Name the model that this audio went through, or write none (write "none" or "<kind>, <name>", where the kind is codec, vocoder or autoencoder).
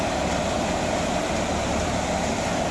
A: vocoder, BigVGAN v2